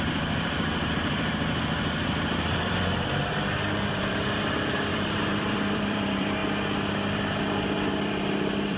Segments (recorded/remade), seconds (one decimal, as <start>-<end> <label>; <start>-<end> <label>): 0.0-6.4 remade; 6.4-7.4 recorded; 7.4-8.8 remade